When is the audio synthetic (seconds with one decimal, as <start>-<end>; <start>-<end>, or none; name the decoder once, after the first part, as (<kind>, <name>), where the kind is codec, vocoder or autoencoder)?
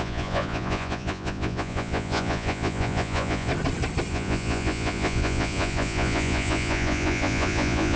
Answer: 0.0-3.5 (vocoder, Vocos); 4.1-8.0